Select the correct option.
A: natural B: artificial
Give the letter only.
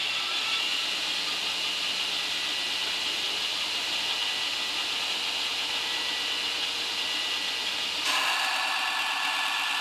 A